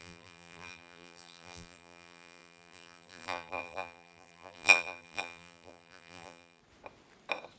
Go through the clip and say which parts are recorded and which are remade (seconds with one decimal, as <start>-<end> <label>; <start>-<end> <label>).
0.0-6.6 remade; 6.6-7.6 recorded